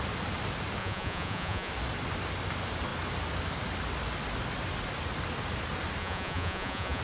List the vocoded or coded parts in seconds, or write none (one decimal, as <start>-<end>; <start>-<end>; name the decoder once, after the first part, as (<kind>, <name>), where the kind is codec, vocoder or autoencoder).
0.8-1.7 (vocoder, Vocos); 6.0-7.0